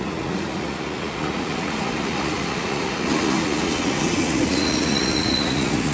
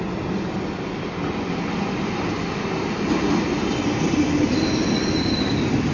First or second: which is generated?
first